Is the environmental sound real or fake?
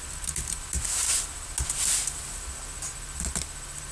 real